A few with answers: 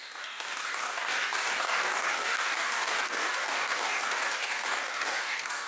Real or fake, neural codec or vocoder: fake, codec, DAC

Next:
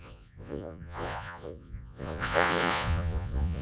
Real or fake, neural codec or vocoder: fake, vocoder, Vocos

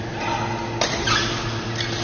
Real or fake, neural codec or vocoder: real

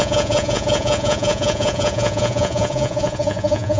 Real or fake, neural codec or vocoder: fake, vocoder, Vocos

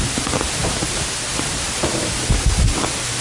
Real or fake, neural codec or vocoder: real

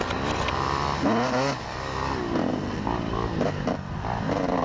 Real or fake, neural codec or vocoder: real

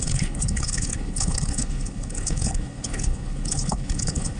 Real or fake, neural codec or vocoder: fake, codec, HILCodec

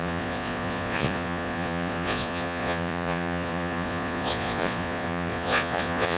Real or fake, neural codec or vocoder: fake, vocoder, Vocos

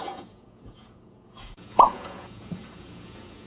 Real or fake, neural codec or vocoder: fake, vocoder, Vocos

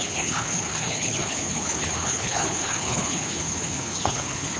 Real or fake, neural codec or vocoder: fake, codec, HILCodec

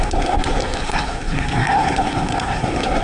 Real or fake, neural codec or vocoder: fake, codec, SNAC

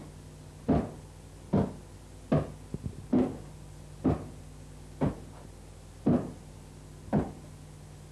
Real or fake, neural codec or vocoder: real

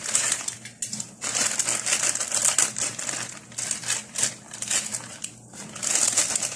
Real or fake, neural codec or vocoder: real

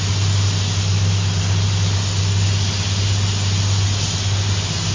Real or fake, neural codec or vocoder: real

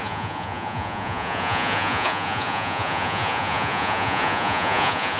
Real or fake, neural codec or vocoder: fake, vocoder, Vocos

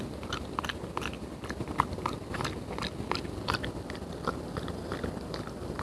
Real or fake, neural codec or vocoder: real